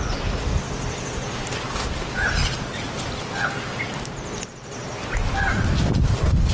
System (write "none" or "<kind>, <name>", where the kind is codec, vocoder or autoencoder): none